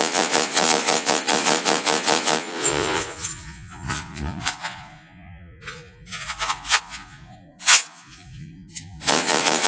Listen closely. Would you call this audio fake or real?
fake